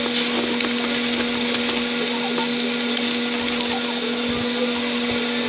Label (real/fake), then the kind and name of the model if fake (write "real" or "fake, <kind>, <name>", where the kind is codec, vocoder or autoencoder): real